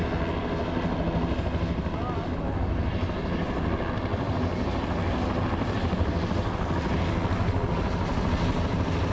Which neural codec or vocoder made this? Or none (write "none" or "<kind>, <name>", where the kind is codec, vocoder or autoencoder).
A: none